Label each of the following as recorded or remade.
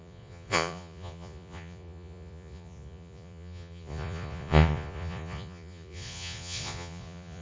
remade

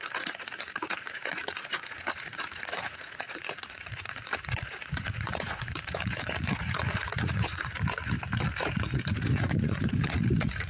remade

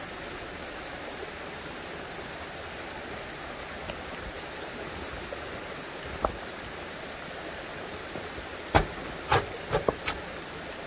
recorded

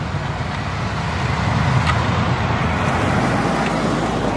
recorded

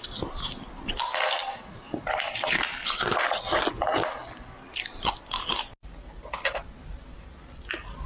recorded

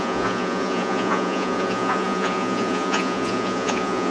remade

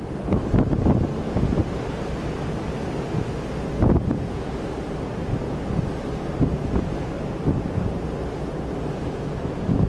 recorded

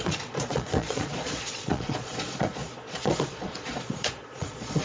remade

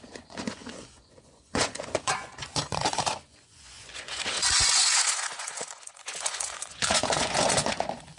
remade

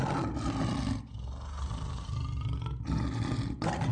recorded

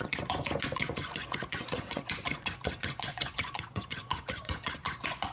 remade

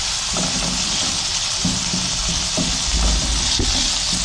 recorded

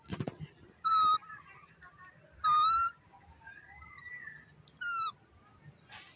recorded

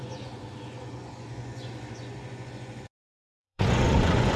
remade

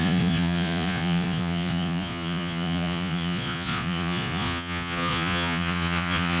remade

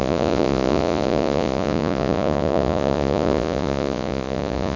remade